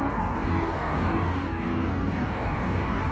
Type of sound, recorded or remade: remade